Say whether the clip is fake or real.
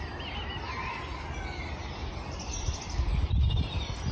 real